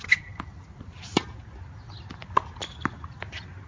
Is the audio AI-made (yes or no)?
no